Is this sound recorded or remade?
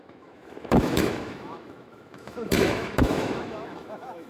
remade